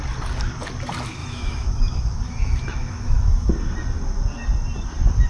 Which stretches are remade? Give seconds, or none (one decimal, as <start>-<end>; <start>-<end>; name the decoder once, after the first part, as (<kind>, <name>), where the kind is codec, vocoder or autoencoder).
1.2-3.5 (autoencoder, DAC-VAE)